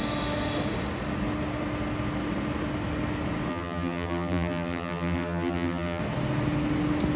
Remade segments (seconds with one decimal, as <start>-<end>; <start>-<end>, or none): 3.5-6.0